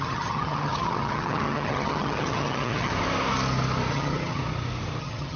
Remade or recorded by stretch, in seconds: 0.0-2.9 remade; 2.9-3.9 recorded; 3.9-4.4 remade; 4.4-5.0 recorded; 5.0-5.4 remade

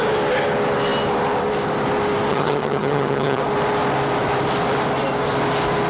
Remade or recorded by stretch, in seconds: 0.0-2.3 recorded; 2.3-3.4 remade; 3.4-5.9 recorded

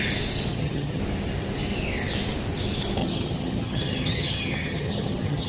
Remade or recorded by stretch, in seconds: 0.0-0.5 recorded; 0.5-1.0 remade; 1.0-3.0 recorded; 3.0-5.5 remade

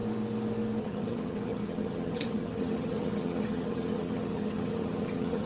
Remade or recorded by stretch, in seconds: 0.0-0.8 recorded; 0.8-5.5 remade

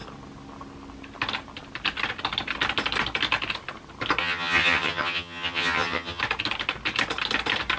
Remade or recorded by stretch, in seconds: 0.0-4.2 recorded; 4.2-6.2 remade; 6.2-7.8 recorded

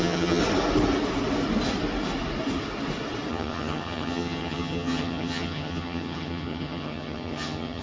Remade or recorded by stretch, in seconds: 0.0-0.4 remade; 0.4-3.3 recorded; 3.3-7.8 remade

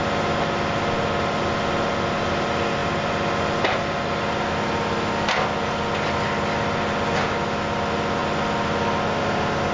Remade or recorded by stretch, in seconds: 0.0-9.7 recorded